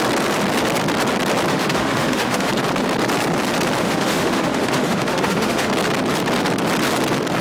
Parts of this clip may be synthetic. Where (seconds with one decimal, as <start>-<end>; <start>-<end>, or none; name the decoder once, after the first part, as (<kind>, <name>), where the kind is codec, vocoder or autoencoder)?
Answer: 1.5-2.5 (autoencoder, DAC-VAE); 3.8-5.7